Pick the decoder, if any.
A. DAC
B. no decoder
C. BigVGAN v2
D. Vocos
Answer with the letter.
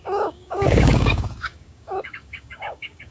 A